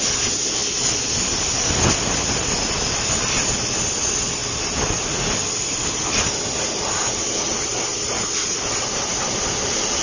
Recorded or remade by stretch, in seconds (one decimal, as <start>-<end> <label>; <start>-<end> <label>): 0.0-4.4 recorded; 4.4-6.9 remade; 6.9-10.0 recorded